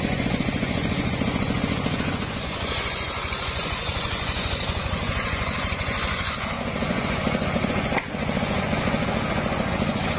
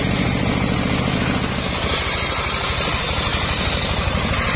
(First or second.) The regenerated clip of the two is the first